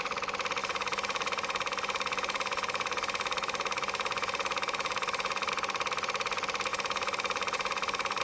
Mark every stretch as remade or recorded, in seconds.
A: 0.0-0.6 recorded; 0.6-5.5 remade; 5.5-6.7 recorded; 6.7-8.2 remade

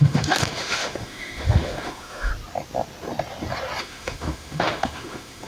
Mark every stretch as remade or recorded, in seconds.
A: 0.0-2.3 remade; 2.3-3.8 recorded; 3.8-5.5 remade